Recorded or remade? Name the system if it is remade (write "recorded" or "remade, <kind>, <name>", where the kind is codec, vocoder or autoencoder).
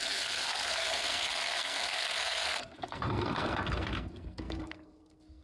remade, codec, SNAC